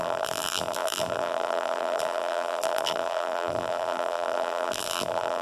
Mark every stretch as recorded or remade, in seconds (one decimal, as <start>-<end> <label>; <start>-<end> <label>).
0.0-5.4 remade